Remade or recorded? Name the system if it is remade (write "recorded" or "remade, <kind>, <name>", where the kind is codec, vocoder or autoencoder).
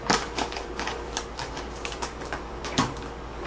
remade, codec, DAC